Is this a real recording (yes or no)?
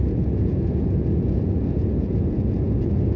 no